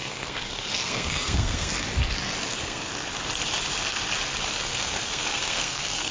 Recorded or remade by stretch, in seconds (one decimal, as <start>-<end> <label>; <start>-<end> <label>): 0.0-1.7 remade; 1.7-2.5 recorded; 2.5-2.9 remade; 2.9-4.6 recorded; 4.6-6.1 remade